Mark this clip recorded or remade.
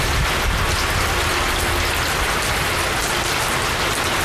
recorded